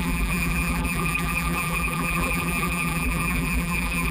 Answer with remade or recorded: remade